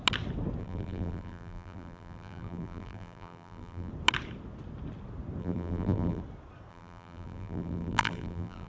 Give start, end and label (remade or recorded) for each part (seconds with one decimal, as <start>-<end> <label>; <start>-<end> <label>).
0.0-0.6 recorded; 0.6-3.9 remade; 3.9-5.4 recorded; 5.4-6.2 remade; 6.2-6.7 recorded; 6.7-8.7 remade